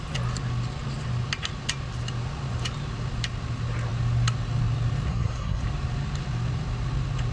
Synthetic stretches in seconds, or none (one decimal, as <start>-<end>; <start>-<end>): 5.1-5.6